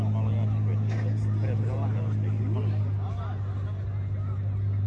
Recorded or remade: recorded